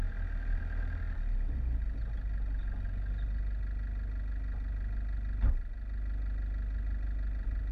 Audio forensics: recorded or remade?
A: recorded